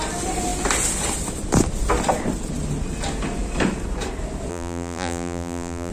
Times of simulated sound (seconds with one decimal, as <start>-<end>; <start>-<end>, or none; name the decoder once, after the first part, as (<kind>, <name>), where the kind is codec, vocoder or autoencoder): 4.5-5.9 (vocoder, BigVGAN v2)

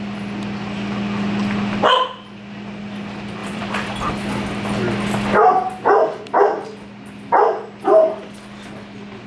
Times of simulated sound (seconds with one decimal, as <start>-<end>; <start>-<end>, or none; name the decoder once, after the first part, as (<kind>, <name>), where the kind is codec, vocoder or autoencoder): 3.4-4.1 (vocoder, BigVGAN v2)

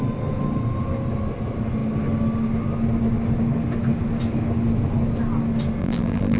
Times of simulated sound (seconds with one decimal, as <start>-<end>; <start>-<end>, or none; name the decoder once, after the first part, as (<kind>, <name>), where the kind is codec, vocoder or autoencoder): 5.8-6.4 (vocoder, BigVGAN v2)